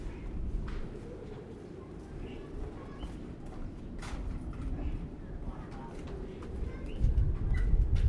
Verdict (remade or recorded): recorded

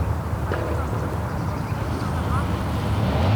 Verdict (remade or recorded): recorded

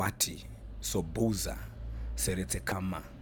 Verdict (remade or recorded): recorded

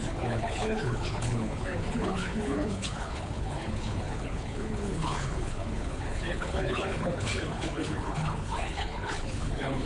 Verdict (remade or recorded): remade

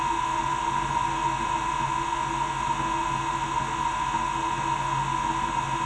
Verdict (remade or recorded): recorded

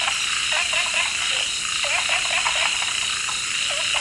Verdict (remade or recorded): remade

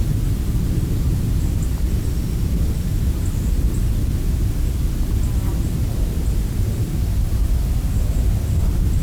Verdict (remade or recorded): recorded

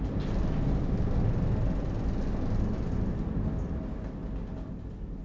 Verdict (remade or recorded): recorded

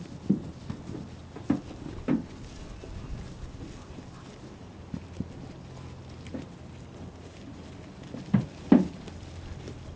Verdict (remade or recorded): recorded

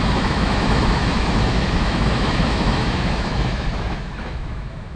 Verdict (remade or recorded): remade